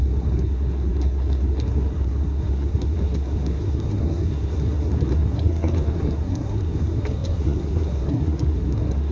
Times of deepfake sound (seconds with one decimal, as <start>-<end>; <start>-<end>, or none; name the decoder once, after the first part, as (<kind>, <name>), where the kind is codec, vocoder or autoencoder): 0.0-9.1 (codec, SNAC)

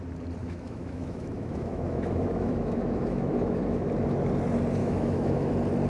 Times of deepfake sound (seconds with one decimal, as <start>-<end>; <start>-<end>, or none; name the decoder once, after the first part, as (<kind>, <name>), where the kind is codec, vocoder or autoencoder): 0.4-3.9 (autoencoder, DAC-VAE); 4.8-5.5

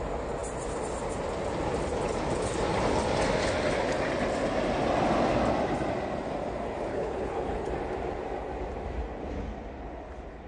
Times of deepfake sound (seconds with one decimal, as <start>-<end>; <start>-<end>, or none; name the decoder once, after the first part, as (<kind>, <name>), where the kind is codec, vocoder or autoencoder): 6.9-7.7 (codec, HILCodec)

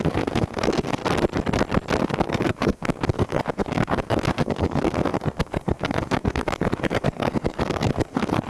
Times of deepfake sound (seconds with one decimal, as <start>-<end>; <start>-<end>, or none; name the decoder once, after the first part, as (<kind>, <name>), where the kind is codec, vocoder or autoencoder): 0.0-1.0 (codec, SNAC); 2.0-8.5

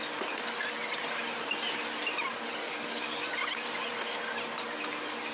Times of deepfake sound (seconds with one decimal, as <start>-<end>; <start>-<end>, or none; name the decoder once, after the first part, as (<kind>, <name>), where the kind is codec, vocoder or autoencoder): 2.6-3.2 (codec, DAC)